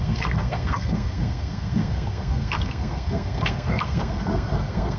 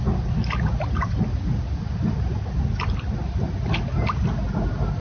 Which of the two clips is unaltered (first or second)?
second